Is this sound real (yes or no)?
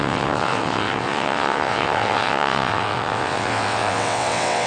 no